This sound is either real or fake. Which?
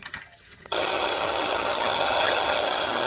fake